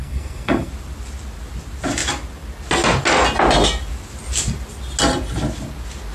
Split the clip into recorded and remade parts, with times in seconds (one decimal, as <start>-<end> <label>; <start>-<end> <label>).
0.0-0.7 remade; 0.7-6.1 recorded